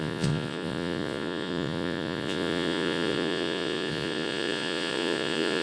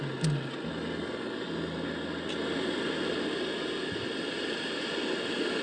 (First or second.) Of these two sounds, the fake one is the first